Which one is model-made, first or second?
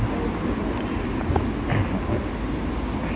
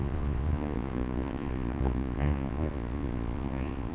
second